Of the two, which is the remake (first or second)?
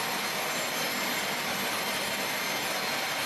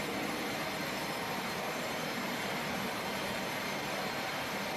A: second